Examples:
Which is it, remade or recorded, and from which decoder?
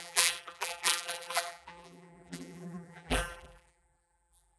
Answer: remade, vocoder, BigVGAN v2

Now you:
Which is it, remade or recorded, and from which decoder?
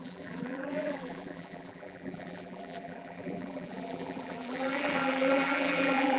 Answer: remade, vocoder, BigVGAN v2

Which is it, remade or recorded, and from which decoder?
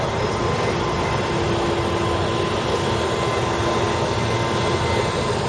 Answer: recorded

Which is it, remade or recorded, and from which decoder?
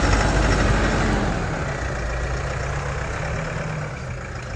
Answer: recorded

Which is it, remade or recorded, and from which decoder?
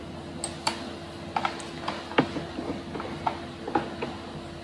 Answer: recorded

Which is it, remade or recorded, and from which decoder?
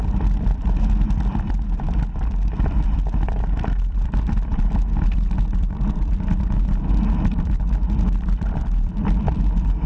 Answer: remade, vocoder, BigVGAN v2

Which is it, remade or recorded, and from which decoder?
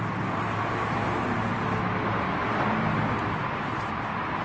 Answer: recorded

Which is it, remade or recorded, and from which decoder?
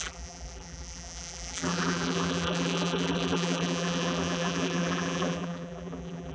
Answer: remade, vocoder, BigVGAN v2